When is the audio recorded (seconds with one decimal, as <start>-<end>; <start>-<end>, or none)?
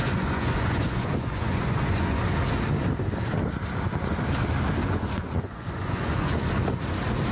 2.2-4.8; 6.5-7.3